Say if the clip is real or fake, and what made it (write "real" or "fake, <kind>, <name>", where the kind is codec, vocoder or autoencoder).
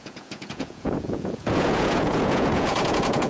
fake, vocoder, Vocos